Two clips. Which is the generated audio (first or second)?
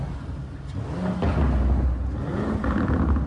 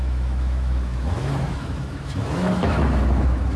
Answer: second